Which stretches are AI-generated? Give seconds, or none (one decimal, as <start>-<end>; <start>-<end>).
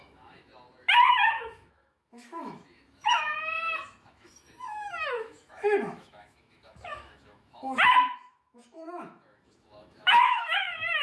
0.0-0.5; 1.1-11.0